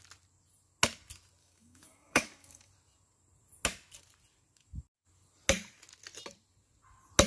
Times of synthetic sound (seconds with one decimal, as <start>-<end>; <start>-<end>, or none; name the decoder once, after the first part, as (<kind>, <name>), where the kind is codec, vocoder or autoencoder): 1.4-2.7 (codec, DAC)